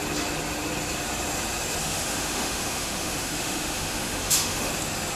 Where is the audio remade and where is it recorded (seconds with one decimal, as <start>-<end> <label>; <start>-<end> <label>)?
0.0-1.8 recorded; 1.8-4.7 remade; 4.7-5.2 recorded